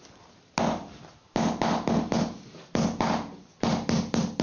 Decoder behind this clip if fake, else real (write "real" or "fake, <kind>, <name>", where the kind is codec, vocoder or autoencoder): real